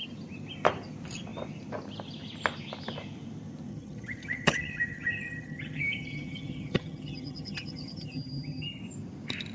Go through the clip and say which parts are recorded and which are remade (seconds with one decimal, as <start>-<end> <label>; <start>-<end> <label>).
0.0-3.7 recorded; 3.7-8.8 remade; 8.8-9.5 recorded